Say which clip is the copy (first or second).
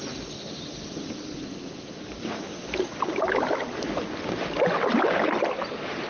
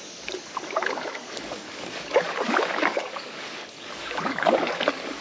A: second